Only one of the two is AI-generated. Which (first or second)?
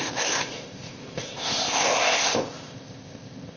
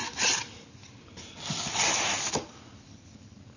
first